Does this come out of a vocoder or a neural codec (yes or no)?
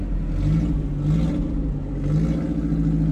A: no